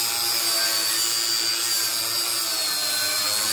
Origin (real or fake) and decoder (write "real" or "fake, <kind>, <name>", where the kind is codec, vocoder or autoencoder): real